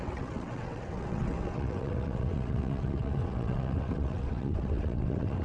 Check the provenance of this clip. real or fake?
fake